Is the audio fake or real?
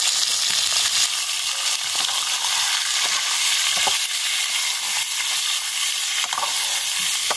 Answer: real